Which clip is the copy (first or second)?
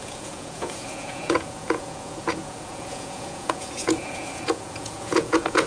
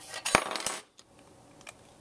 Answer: first